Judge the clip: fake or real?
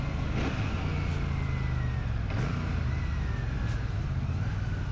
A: real